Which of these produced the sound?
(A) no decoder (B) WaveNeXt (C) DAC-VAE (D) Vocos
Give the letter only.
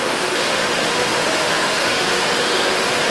C